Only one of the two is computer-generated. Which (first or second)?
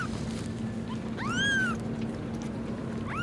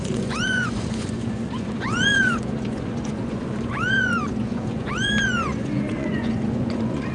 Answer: second